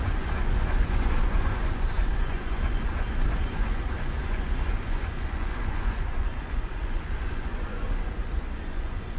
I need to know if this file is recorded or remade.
remade